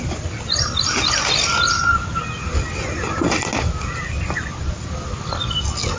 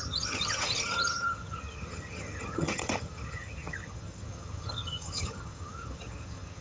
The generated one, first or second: second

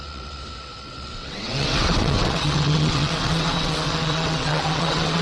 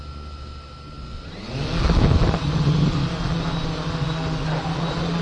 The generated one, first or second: first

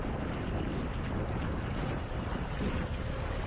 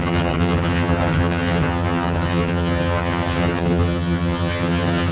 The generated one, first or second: second